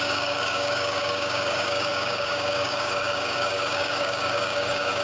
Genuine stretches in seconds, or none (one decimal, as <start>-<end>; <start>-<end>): none